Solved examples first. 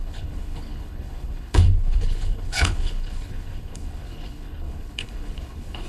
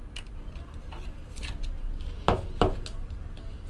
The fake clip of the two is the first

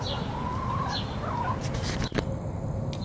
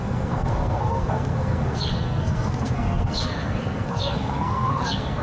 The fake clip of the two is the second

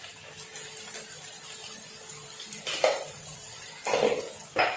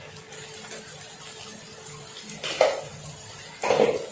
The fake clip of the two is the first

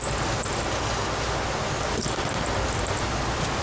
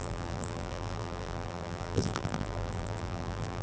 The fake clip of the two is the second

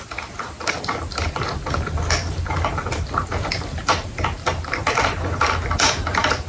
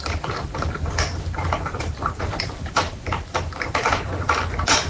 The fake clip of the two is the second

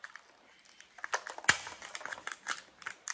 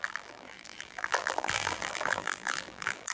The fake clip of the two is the second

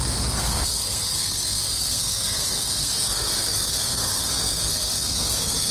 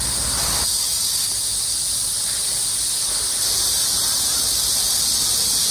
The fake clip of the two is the first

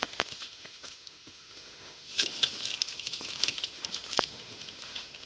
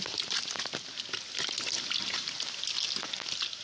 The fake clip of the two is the first